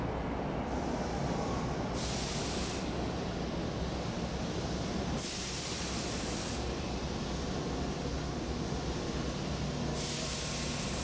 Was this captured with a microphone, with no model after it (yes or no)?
yes